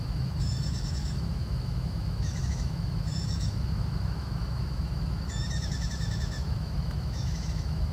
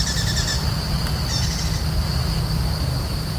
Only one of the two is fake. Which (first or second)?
first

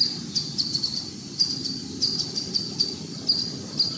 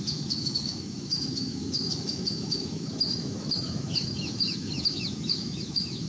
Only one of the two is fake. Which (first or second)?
second